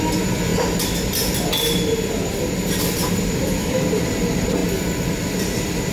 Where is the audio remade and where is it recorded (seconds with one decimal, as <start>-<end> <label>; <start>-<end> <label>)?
0.0-5.9 recorded